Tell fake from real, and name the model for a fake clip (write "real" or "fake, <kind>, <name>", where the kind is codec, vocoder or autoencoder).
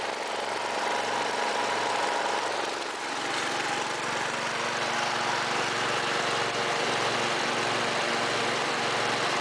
real